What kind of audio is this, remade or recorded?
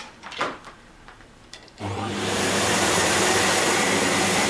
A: remade